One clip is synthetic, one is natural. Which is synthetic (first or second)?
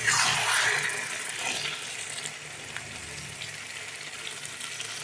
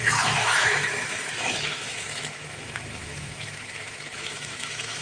second